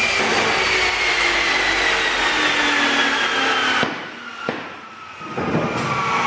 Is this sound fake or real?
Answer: real